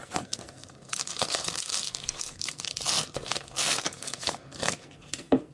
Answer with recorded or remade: remade